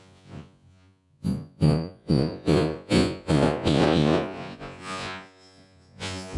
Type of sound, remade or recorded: remade